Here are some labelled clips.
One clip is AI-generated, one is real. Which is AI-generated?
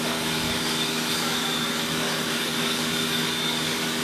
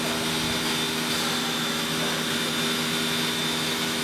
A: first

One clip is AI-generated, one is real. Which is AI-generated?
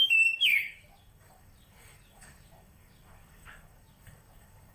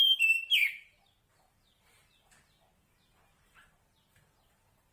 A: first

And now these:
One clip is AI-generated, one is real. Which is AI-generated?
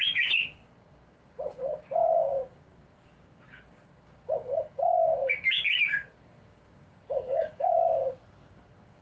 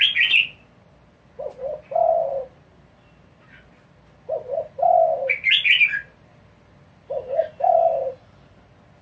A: first